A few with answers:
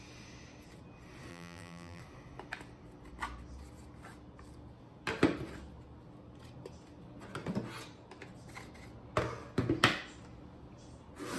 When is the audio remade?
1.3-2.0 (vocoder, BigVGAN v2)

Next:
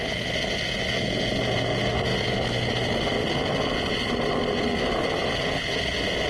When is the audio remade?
none

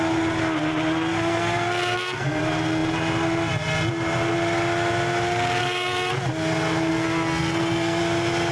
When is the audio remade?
1.1-2.4 (codec, SNAC); 5.6-6.1; 6.9-8.0

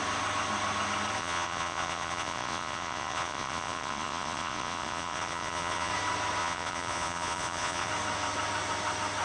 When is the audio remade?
1.2-5.9 (vocoder, Vocos); 6.4-7.9

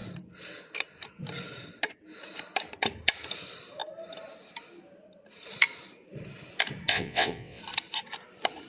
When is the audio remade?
6.9-7.6 (vocoder, WaveNeXt)

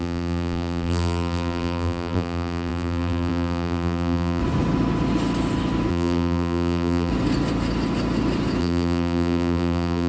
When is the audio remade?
0.0-4.4 (vocoder, BigVGAN v2); 5.9-7.1; 8.6-10.1

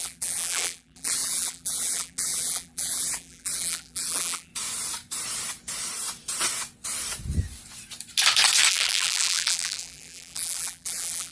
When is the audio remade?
0.0-4.5 (vocoder, BigVGAN v2); 8.7-11.3